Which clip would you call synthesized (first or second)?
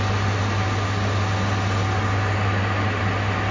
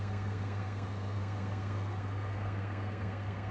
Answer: second